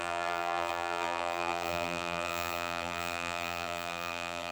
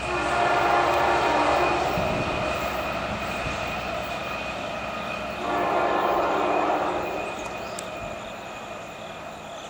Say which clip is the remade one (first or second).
first